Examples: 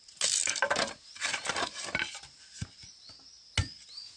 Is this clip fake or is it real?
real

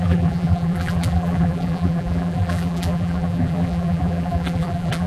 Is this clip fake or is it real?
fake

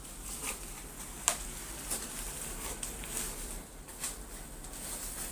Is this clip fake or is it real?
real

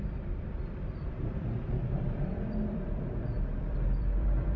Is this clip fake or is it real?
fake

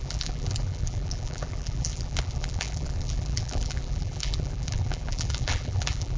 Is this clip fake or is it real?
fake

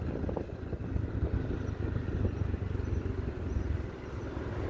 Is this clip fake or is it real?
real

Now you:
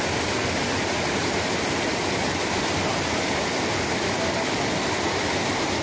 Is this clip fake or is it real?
real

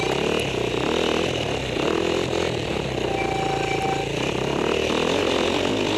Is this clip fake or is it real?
real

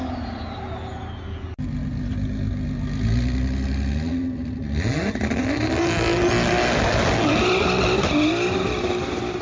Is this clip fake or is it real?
real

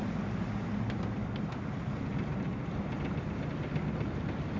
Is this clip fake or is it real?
real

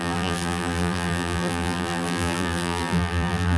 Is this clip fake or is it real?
fake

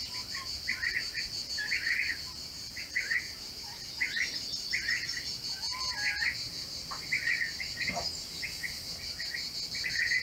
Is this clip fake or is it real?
real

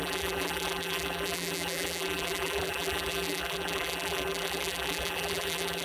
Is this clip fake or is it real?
fake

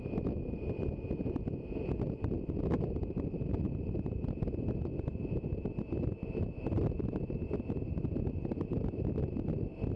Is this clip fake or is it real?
real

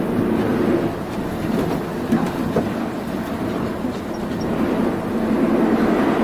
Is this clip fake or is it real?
real